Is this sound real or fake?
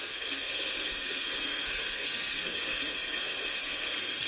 fake